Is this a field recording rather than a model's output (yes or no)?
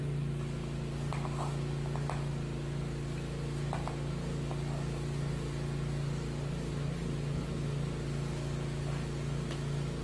yes